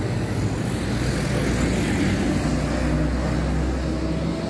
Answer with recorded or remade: recorded